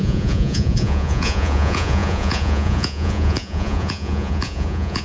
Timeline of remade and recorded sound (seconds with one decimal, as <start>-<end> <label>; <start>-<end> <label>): 0.0-5.0 remade